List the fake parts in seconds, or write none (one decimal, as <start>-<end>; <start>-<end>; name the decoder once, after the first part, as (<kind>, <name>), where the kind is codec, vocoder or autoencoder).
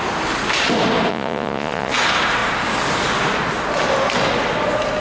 1.1-1.9 (vocoder, Vocos)